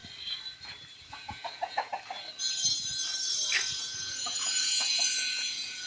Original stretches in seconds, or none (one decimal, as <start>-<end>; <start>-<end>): 0.0-1.1; 1.9-3.6